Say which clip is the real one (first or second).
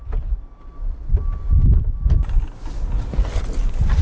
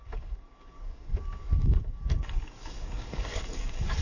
first